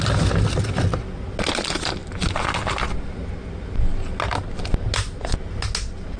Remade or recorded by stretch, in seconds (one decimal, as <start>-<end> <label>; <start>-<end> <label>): 0.0-6.2 recorded